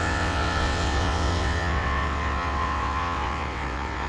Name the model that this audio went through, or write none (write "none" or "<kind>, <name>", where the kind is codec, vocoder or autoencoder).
vocoder, WaveNeXt